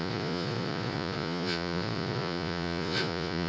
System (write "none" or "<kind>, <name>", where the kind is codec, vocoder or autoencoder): vocoder, Vocos